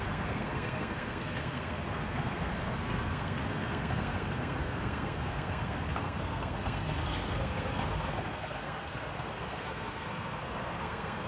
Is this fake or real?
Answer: fake